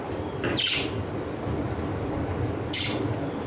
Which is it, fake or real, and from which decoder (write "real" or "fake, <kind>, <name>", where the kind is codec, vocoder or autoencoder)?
real